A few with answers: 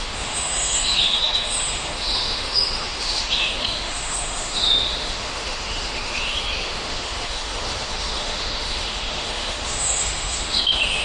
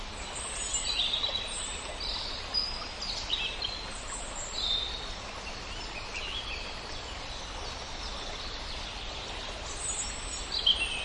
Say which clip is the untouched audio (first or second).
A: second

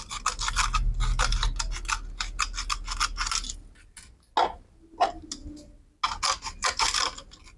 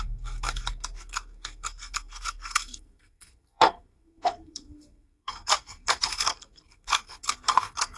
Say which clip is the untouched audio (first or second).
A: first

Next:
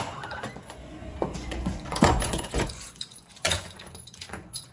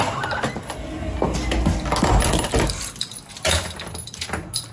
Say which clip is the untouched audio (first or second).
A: second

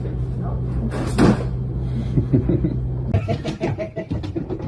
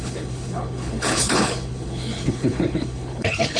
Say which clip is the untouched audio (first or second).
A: first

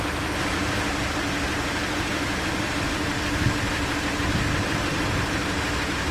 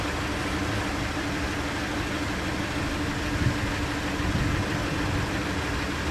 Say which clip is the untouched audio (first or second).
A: second